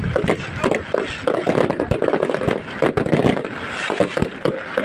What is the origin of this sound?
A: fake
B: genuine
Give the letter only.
B